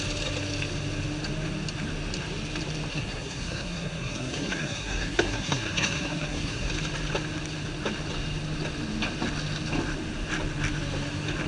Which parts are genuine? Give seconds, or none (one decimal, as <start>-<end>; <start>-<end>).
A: 0.0-2.9; 6.7-11.5